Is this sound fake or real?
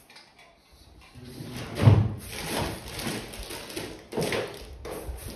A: real